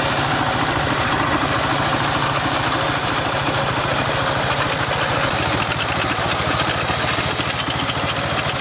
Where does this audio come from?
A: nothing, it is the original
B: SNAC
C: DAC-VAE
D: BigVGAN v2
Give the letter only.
A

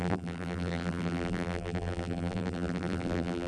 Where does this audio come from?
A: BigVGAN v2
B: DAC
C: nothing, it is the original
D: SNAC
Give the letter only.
A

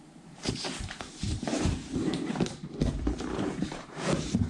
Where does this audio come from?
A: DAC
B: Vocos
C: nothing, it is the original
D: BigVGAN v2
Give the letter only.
D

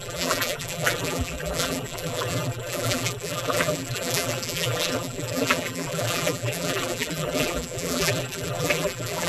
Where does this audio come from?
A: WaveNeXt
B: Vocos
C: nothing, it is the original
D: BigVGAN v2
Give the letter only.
D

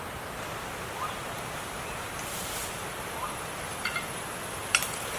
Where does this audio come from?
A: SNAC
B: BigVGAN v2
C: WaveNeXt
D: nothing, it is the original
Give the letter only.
B